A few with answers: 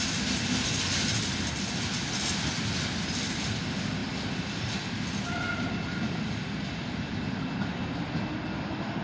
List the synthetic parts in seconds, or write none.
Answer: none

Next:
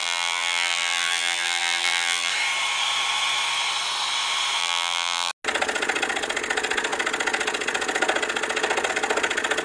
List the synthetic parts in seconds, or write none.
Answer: 0.0-2.3 (vocoder, BigVGAN v2); 4.6-5.3